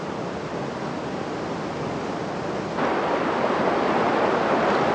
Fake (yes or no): no